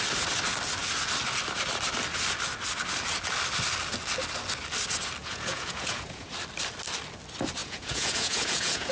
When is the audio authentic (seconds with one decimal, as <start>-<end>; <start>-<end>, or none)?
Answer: 0.0-5.2; 6.3-7.6